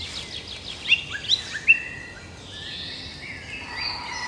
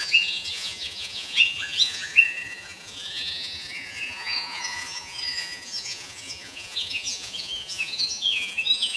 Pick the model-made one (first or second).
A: second